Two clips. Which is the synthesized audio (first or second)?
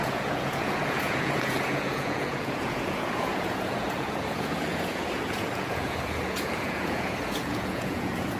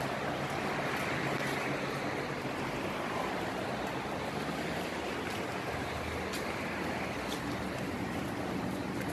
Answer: first